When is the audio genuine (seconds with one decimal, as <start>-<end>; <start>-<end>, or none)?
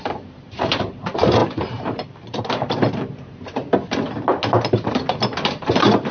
3.6-4.7